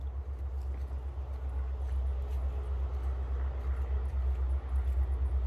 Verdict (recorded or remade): recorded